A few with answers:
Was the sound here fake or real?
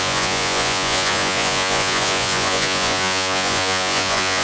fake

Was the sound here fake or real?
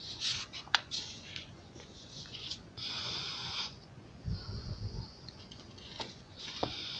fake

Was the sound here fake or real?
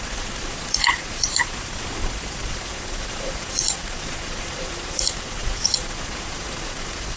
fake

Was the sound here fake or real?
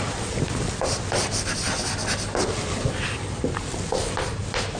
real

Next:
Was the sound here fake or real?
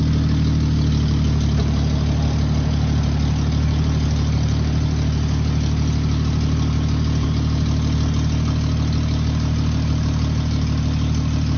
real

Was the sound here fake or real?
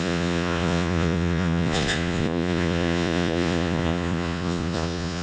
fake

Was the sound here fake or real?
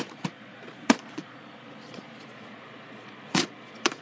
fake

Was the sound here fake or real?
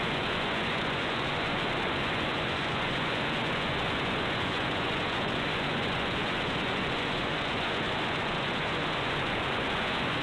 fake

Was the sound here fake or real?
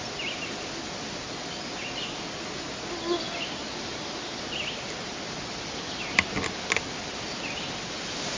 real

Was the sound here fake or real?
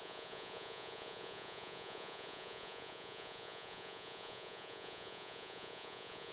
fake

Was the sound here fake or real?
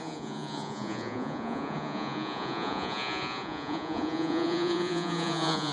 fake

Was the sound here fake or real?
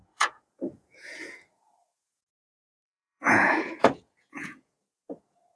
fake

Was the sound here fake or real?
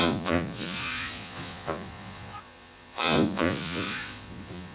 fake